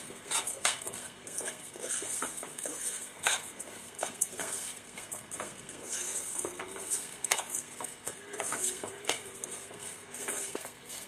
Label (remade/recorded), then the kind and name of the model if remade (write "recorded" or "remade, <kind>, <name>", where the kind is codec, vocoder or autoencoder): remade, codec, SNAC